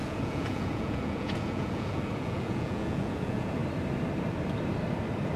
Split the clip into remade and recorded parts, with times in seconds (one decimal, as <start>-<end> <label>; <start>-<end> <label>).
0.0-3.6 remade; 3.6-5.4 recorded

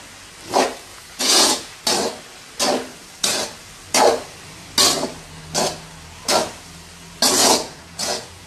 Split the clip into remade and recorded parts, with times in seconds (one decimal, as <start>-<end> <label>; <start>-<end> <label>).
0.0-0.9 recorded; 0.9-1.8 remade; 1.8-7.4 recorded; 7.4-8.5 remade

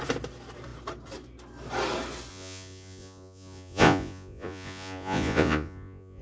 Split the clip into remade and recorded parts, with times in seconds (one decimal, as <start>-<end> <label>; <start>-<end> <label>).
0.0-2.3 recorded; 2.3-6.2 remade